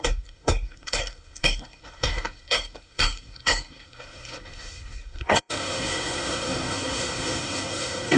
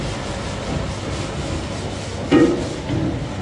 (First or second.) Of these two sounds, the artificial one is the first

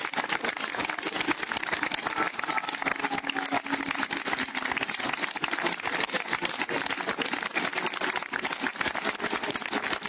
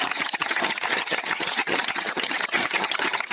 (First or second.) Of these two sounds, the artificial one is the second